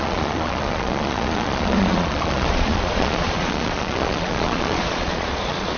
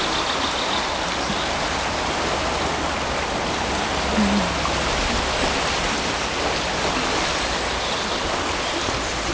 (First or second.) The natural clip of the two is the second